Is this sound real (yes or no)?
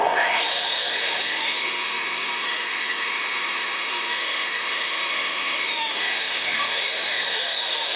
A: no